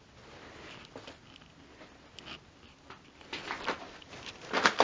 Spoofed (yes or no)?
no